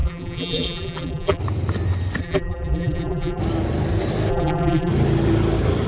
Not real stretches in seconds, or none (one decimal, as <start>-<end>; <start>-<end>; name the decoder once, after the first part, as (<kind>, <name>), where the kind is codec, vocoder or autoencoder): 0.0-1.4 (vocoder, BigVGAN v2); 2.2-3.4; 4.3-4.9

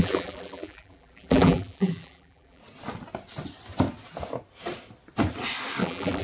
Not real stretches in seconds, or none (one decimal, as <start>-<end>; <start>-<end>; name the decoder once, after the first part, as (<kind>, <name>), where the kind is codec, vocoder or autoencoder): 0.0-2.6 (vocoder, BigVGAN v2); 5.8-6.2

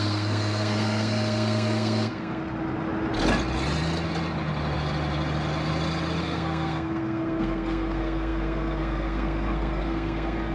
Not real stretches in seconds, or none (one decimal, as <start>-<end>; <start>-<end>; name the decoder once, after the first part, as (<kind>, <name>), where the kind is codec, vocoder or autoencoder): 0.0-2.4 (codec, SNAC); 6.2-10.5

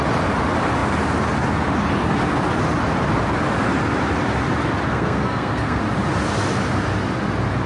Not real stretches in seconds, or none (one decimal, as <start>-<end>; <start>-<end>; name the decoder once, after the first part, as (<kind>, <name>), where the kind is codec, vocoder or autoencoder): 4.9-5.8 (codec, SNAC)

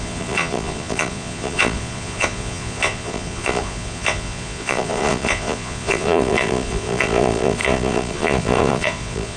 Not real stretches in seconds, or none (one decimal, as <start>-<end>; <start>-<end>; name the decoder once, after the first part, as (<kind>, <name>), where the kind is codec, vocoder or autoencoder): 0.0-9.4 (vocoder, Vocos)

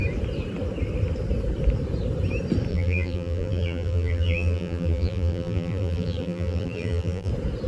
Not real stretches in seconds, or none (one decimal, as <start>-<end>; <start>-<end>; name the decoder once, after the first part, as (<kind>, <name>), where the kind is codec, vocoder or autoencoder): 2.7-7.3 (vocoder, BigVGAN v2)

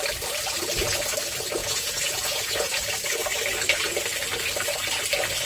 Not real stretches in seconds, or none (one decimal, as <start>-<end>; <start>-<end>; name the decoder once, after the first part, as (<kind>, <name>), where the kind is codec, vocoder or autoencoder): 1.6-2.8 (vocoder, Vocos)